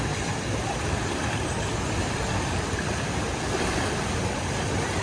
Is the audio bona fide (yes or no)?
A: no